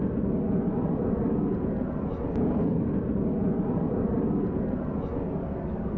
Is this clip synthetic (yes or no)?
no